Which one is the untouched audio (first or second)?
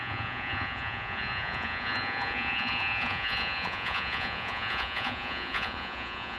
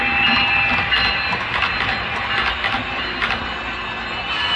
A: second